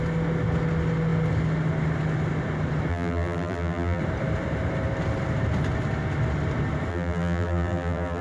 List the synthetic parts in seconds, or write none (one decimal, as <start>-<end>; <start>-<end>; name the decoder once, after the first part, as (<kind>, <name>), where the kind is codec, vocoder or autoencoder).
2.9-4.0 (vocoder, BigVGAN v2); 6.9-8.2